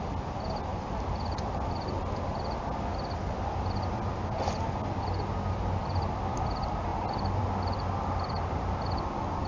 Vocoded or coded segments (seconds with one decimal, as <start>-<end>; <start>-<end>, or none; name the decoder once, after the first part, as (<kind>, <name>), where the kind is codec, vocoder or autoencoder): none